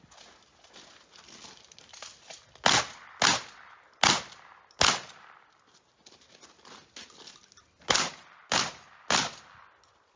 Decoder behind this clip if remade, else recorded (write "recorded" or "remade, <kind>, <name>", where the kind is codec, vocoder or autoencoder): recorded